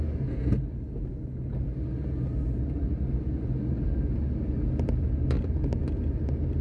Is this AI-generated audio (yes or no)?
no